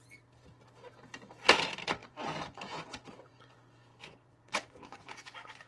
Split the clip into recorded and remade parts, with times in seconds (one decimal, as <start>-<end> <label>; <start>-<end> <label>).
0.0-2.0 recorded; 2.0-5.7 remade